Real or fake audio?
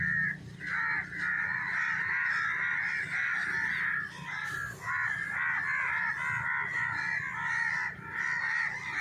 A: real